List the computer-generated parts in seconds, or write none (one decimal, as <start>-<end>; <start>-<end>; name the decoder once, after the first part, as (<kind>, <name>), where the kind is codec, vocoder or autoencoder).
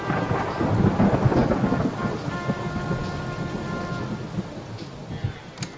none